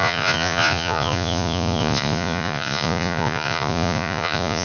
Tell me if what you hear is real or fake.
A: fake